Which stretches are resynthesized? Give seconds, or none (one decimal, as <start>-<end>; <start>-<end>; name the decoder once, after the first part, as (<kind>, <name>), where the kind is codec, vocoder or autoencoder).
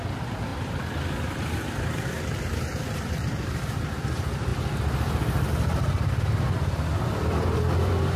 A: 0.0-4.5 (vocoder, BigVGAN v2); 5.5-8.2